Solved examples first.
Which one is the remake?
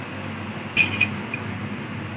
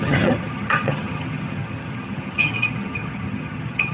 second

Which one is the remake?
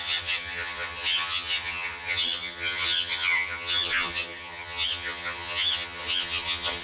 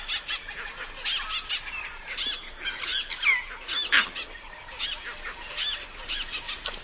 first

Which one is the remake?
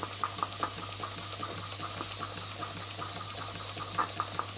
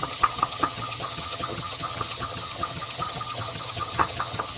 second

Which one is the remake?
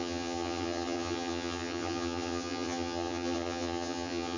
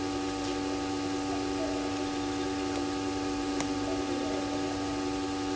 first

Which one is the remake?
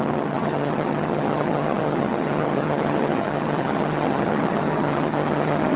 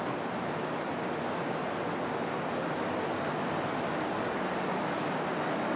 first